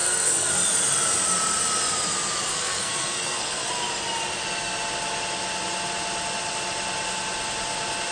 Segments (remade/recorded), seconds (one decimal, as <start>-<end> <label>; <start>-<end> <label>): 0.0-0.5 remade; 0.5-2.5 recorded; 2.5-3.7 remade; 3.7-8.1 recorded

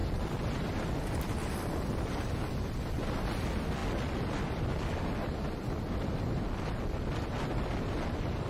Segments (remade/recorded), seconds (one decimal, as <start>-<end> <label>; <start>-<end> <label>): 0.0-8.5 recorded

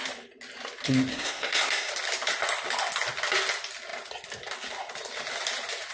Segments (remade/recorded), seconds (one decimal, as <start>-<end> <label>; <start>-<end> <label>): 0.0-1.1 recorded; 1.1-1.9 remade; 1.9-5.9 recorded

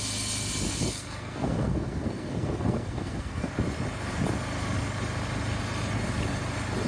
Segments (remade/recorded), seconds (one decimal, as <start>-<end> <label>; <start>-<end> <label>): 0.0-0.7 recorded; 0.7-3.5 remade; 3.5-6.9 recorded

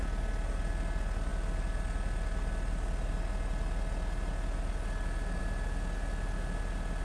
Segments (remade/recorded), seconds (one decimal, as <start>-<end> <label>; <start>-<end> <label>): 0.0-7.0 recorded

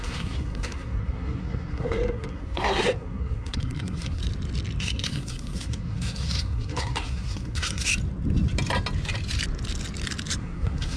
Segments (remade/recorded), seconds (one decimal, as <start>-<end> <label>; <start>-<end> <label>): 0.0-4.2 remade; 4.2-4.8 recorded; 4.8-7.9 remade; 7.9-10.4 recorded; 10.4-11.0 remade

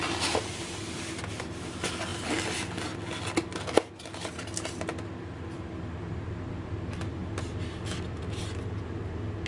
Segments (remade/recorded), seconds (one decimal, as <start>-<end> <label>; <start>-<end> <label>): 0.0-9.5 recorded